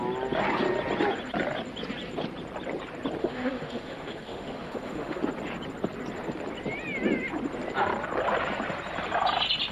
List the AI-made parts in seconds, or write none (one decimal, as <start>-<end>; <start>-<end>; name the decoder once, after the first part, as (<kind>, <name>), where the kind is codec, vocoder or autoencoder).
3.2-5.2 (autoencoder, DAC-VAE)